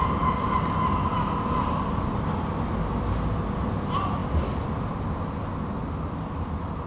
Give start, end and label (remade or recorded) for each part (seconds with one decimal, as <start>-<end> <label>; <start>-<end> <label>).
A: 0.0-4.2 recorded; 4.2-5.4 remade; 5.4-6.9 recorded